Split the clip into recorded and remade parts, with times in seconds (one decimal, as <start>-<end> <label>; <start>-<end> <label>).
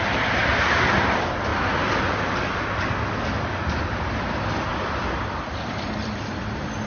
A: 0.0-0.4 remade; 0.4-1.0 recorded; 1.0-1.5 remade; 1.5-4.2 recorded; 4.2-6.9 remade